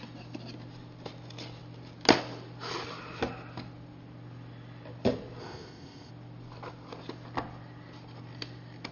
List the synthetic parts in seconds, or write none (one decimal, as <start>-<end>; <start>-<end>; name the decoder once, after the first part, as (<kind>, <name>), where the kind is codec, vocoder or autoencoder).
5.4-6.1 (codec, ZipCodec)